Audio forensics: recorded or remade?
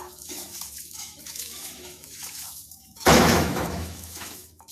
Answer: remade